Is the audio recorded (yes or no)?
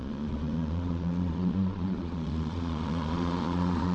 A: no